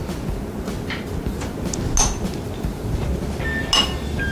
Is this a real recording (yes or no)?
yes